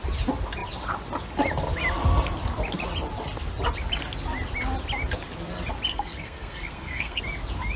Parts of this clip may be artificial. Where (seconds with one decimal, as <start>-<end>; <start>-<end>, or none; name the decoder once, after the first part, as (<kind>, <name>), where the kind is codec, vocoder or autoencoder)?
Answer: 5.9-7.2 (codec, SNAC)